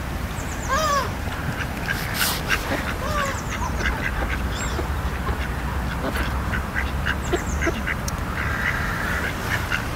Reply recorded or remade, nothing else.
remade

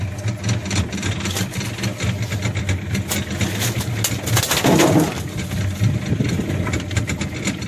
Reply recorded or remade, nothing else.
recorded